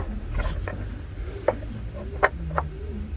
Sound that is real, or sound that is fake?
real